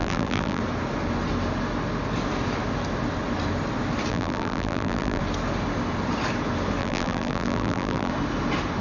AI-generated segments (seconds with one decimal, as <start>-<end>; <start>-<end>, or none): 0.0-0.6; 4.1-5.2; 6.8-8.1